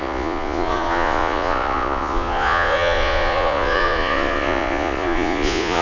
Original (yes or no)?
no